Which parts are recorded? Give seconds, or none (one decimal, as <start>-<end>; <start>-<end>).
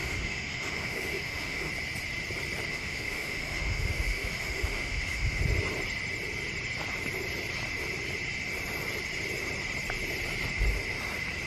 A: 1.7-2.7; 5.4-11.5